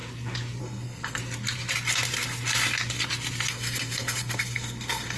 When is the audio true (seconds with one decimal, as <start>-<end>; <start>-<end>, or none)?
0.0-0.6; 1.2-3.5